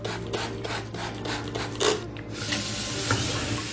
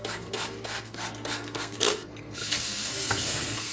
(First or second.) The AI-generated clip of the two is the second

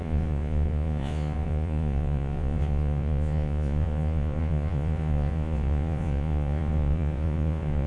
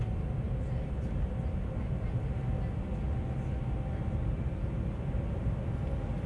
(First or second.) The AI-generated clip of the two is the first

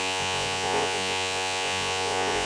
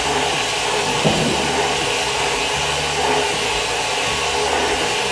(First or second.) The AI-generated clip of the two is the first